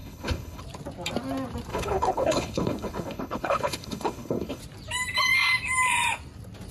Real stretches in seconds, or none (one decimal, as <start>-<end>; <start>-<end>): 0.6-1.7; 4.6-6.7